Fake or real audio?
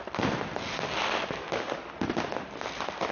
real